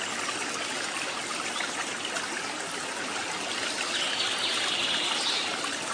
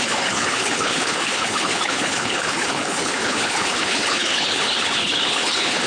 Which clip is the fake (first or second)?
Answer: second